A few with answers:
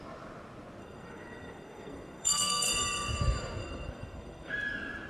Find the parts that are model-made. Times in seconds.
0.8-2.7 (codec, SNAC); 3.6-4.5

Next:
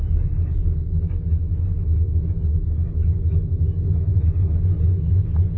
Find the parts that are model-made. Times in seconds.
0.0-5.6 (autoencoder, DAC-VAE)

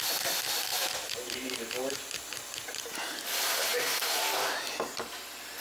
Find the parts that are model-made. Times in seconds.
none

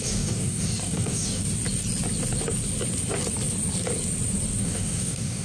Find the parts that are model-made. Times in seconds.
0.0-1.4 (codec, DAC); 4.6-5.4

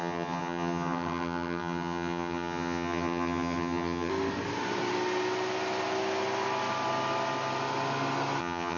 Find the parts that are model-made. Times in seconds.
0.0-4.1 (vocoder, HiFi-GAN); 8.4-8.8